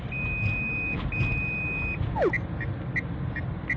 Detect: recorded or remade recorded